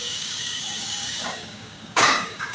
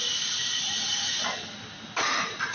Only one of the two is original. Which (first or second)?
second